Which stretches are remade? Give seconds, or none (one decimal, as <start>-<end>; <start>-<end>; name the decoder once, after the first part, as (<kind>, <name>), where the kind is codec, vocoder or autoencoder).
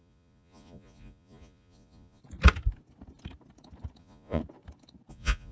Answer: 0.0-2.2 (vocoder, Vocos); 4.0-4.4; 5.1-5.5